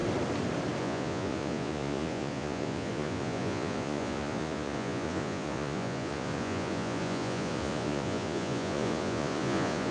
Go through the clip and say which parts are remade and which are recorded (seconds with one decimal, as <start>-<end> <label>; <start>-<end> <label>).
0.0-0.8 recorded; 0.8-9.9 remade